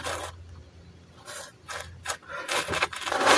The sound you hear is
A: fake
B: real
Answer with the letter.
B